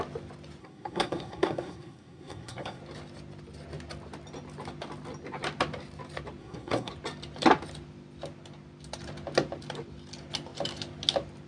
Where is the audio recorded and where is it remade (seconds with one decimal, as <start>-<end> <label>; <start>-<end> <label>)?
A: 0.0-0.6 recorded; 0.6-2.8 remade; 2.8-6.4 recorded; 6.4-6.9 remade; 6.9-11.5 recorded